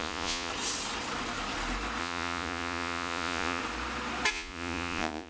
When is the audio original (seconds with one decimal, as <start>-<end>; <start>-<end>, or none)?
0.5-2.0; 3.6-4.3